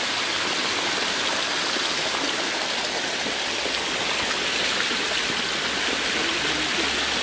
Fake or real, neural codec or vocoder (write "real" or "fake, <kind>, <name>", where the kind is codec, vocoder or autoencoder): real